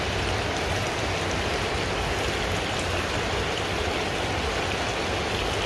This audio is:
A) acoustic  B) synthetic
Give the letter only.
A